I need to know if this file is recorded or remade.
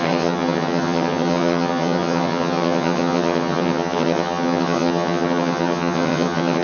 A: remade